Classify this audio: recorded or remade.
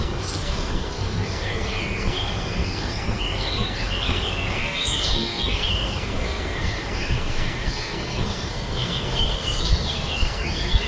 remade